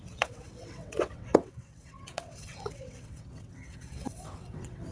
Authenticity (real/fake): fake